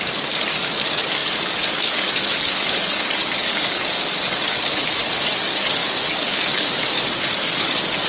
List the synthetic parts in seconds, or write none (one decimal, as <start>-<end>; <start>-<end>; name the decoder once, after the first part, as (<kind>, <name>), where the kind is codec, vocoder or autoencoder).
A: 0.0-8.1 (codec, DAC)